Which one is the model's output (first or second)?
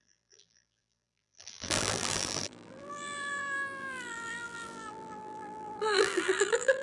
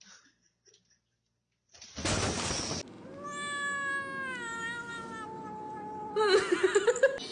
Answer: first